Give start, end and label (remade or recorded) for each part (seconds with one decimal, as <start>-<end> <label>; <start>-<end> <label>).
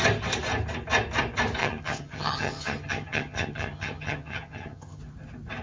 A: 0.0-1.6 recorded; 1.6-5.0 remade; 5.0-5.6 recorded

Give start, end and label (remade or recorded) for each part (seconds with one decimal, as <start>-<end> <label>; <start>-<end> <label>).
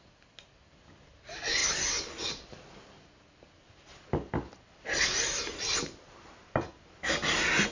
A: 0.0-7.7 recorded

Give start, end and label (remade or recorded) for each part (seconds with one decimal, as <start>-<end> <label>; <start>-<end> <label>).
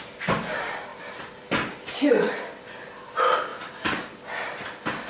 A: 0.0-5.1 recorded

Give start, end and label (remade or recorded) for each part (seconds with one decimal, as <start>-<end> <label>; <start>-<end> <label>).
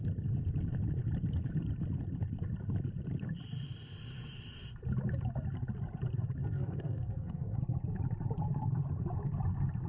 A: 0.0-6.4 recorded; 6.4-7.6 remade; 7.6-9.9 recorded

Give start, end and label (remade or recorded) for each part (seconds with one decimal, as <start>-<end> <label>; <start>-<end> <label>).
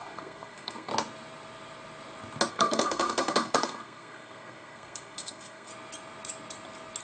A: 0.0-0.9 remade; 0.9-2.5 recorded; 2.5-5.7 remade; 5.7-7.0 recorded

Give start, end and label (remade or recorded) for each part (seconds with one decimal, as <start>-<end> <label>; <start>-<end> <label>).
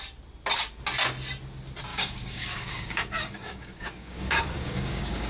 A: 0.0-1.9 recorded; 1.9-5.3 remade